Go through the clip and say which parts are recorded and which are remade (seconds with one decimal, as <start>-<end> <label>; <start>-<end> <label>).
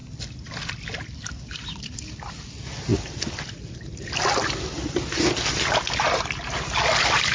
0.0-7.3 recorded